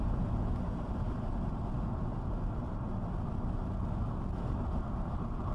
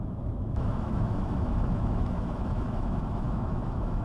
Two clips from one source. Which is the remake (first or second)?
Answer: second